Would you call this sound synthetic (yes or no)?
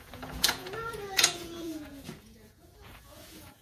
yes